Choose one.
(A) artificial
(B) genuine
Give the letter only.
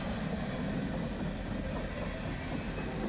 B